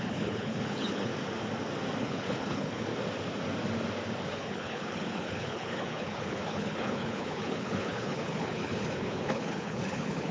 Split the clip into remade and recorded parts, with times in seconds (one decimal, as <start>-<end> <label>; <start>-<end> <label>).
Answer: 0.0-1.1 remade; 1.1-2.0 recorded; 2.0-2.9 remade; 2.9-4.3 recorded; 4.3-10.3 remade